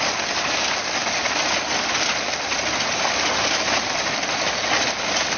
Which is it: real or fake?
real